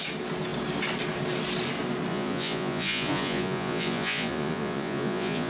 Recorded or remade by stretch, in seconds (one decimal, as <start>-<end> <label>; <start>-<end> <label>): 0.0-2.1 recorded; 2.1-5.5 remade